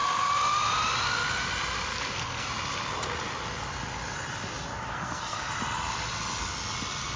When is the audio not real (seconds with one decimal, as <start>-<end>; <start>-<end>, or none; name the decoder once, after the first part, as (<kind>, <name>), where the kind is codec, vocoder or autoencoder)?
1.9-2.5 (codec, SNAC); 4.9-5.5